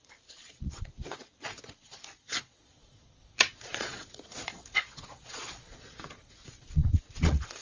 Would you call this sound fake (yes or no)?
yes